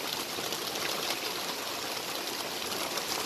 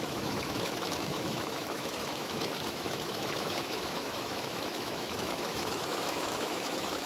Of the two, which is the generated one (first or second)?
second